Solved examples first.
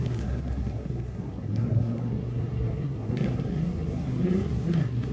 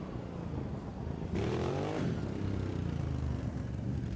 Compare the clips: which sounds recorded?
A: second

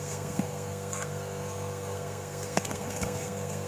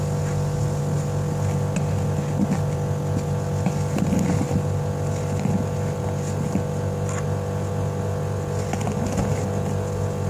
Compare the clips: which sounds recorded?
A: second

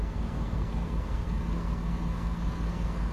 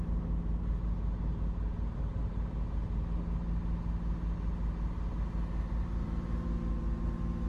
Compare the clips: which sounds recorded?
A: second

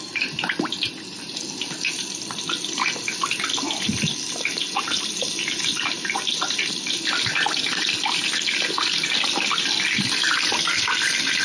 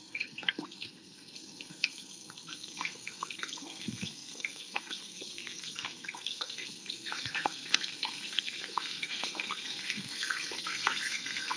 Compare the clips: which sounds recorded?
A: first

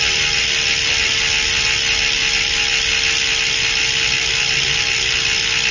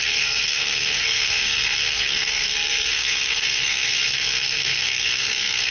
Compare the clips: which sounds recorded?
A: first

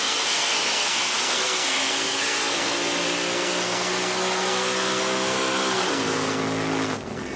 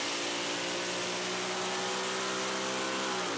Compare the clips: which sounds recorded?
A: second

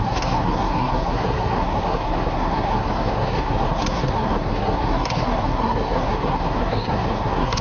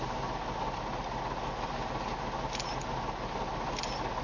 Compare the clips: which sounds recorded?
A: second